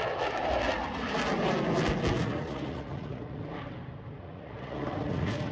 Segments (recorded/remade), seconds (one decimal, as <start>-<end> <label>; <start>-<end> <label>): 0.0-2.2 recorded; 2.2-3.4 remade; 3.4-4.2 recorded; 4.2-5.5 remade